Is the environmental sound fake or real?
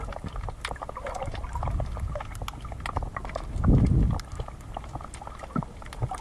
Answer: real